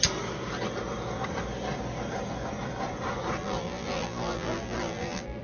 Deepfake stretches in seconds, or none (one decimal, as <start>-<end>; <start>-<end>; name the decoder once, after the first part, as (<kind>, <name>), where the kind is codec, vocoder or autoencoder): 3.4-5.4 (vocoder, BigVGAN v2)